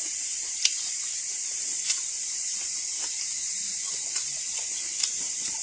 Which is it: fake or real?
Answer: fake